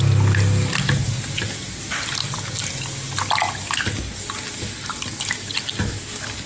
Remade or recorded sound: recorded